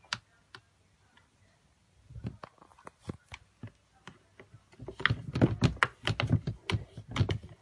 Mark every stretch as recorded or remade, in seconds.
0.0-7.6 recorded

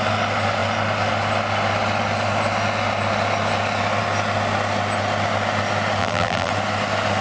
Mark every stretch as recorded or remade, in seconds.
0.0-6.0 recorded; 6.0-6.5 remade; 6.5-7.2 recorded

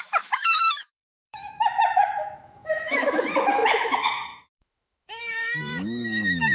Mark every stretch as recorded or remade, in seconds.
0.0-6.5 remade